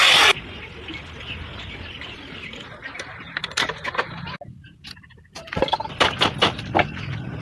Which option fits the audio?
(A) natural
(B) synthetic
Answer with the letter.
A